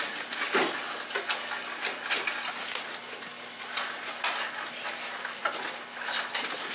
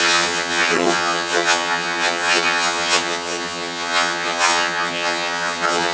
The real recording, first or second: first